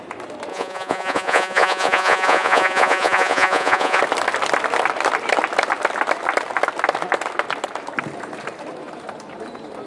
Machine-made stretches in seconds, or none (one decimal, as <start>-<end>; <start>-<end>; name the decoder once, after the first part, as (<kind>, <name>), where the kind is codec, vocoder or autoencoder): 0.5-4.0 (vocoder, Vocos)